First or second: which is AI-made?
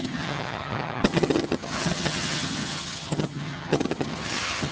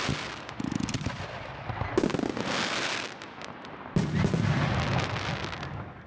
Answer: first